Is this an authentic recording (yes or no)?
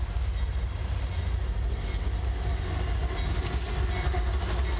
yes